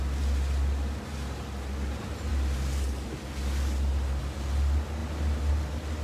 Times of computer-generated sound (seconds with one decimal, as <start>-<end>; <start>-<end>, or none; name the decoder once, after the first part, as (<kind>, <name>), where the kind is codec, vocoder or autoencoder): none